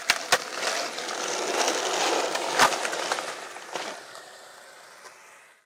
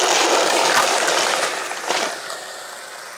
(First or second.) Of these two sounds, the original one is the second